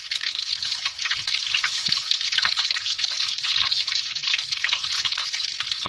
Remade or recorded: remade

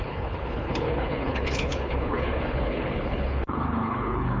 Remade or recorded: remade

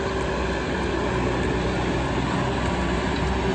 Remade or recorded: recorded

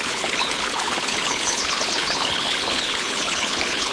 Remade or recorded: remade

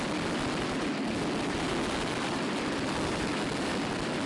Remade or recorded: recorded